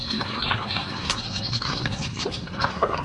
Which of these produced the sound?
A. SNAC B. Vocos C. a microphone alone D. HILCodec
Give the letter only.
A